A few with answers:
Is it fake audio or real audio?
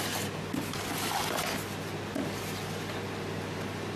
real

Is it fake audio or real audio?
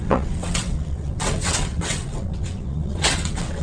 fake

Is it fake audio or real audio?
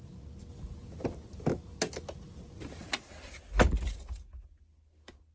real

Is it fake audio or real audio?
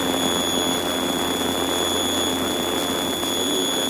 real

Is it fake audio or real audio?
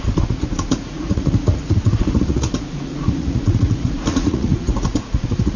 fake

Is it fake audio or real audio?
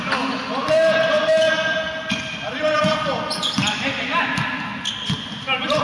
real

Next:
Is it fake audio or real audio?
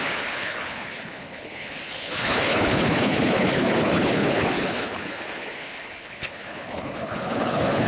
fake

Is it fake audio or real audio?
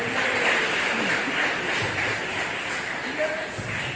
fake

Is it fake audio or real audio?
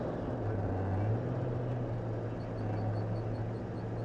real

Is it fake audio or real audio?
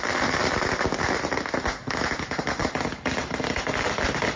real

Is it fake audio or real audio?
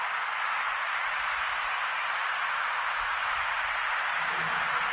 real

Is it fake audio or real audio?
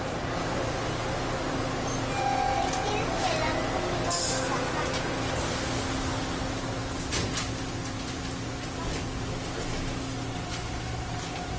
real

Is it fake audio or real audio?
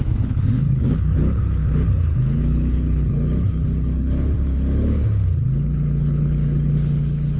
fake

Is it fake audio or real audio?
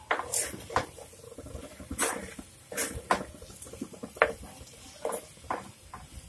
real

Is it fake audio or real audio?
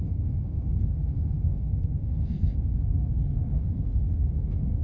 fake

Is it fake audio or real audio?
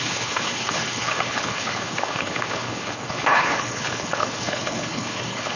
fake